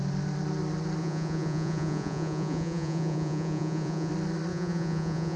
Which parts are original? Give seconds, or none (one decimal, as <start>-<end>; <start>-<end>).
0.0-1.0; 4.1-4.5